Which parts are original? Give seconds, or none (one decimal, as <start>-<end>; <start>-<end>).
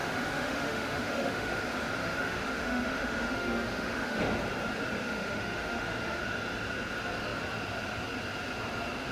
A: 1.6-2.0; 4.2-5.0; 6.2-9.1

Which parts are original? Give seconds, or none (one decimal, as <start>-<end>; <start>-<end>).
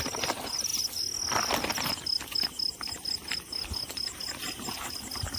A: 0.0-5.4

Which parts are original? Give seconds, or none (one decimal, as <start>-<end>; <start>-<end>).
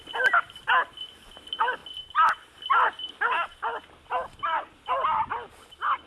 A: 0.0-6.1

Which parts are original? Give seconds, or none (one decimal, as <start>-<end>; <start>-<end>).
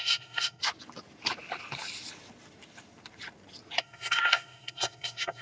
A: 0.6-3.8